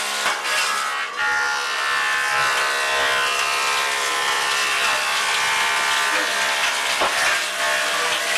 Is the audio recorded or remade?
recorded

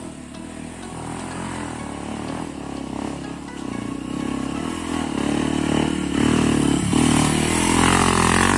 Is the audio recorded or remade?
recorded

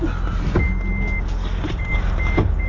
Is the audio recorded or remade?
recorded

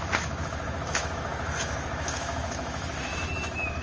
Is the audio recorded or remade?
remade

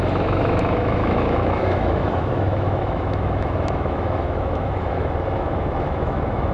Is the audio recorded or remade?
remade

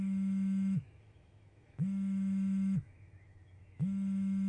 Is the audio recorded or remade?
remade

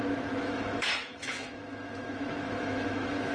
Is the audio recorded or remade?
remade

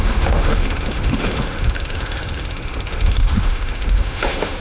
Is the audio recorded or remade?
remade